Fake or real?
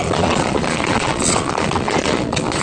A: fake